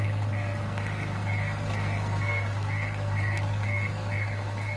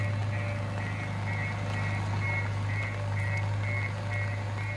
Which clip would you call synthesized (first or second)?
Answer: first